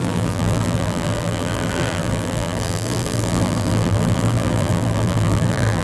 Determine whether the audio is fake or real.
fake